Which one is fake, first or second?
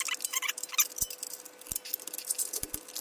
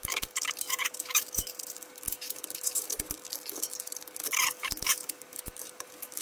second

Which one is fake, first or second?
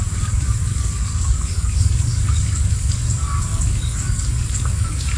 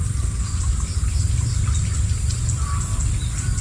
first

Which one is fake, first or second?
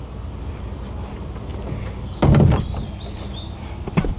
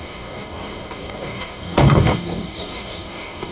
second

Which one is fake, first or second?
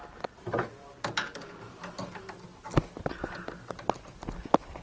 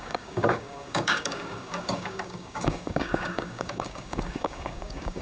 second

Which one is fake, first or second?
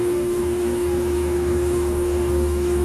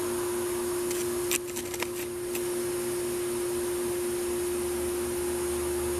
first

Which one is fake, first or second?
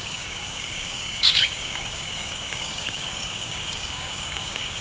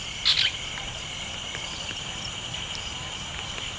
first